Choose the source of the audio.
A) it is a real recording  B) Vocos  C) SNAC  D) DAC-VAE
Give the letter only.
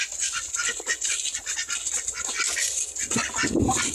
A